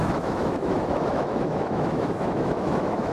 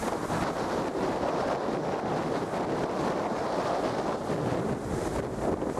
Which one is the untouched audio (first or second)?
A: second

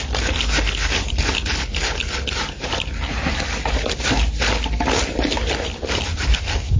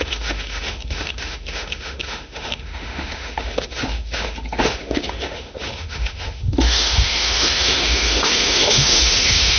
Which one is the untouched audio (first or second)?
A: first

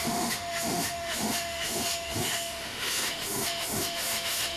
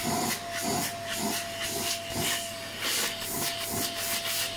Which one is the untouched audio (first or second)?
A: second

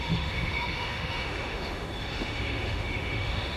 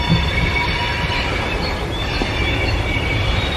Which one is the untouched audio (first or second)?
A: second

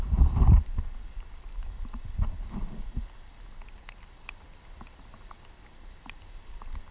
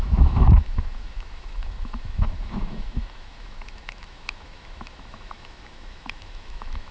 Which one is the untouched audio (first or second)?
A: first